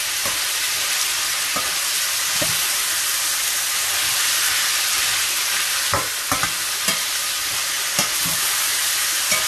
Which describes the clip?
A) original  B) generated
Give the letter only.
A